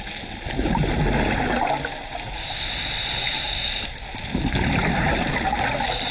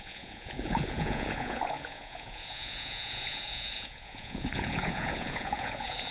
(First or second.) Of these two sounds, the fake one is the second